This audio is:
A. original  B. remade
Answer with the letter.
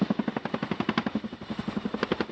A